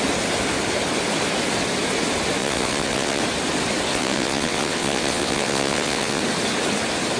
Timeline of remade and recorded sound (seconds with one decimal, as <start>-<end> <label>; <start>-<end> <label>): 0.0-2.4 recorded; 2.4-3.2 remade; 3.2-3.9 recorded; 3.9-6.2 remade; 6.2-7.2 recorded